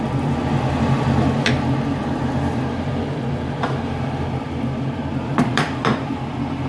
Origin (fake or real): fake